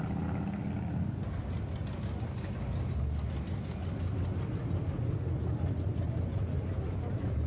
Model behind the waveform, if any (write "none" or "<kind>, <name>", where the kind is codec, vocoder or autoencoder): none